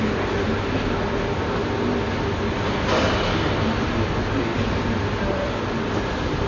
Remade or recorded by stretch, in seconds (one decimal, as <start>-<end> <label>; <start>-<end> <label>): 0.0-4.5 recorded; 4.5-5.7 remade; 5.7-6.5 recorded